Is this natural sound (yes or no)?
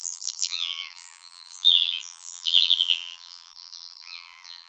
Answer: no